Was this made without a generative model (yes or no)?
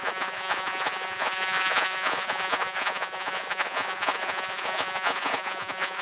no